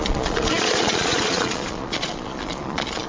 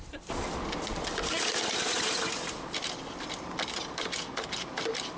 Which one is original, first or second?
second